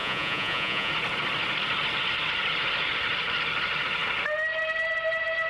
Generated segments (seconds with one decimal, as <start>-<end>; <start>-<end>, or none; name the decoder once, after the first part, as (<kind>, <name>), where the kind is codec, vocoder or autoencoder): 0.0-0.9 (vocoder, Vocos)